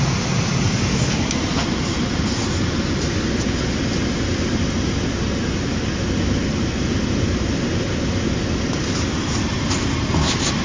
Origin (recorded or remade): recorded